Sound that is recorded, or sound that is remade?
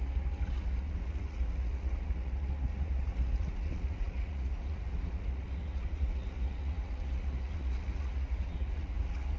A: remade